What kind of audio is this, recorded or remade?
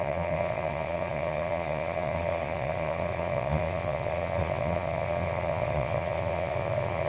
remade